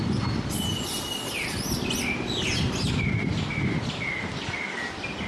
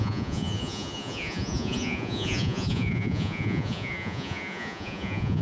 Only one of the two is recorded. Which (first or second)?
first